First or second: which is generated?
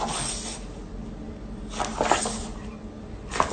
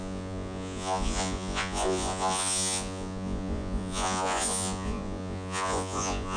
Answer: second